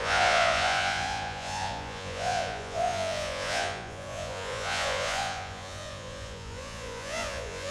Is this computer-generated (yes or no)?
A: yes